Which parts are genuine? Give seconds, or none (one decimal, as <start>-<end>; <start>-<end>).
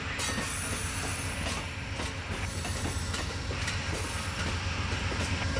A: 0.0-5.6